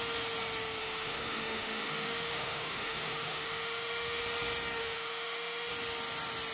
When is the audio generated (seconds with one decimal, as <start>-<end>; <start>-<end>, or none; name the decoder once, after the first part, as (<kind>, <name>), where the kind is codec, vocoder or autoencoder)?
0.8-4.2 (autoencoder, DAC-VAE); 4.8-5.7